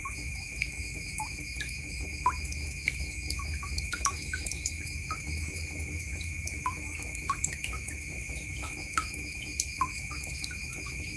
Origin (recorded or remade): remade